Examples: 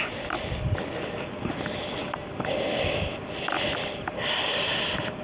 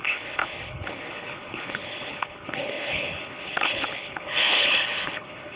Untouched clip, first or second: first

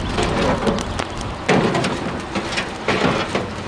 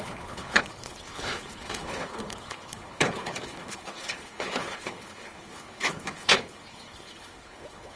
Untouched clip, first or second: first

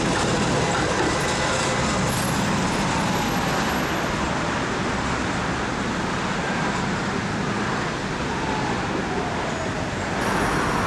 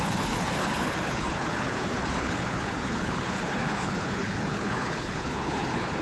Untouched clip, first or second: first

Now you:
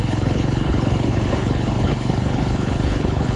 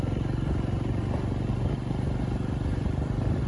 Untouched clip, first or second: second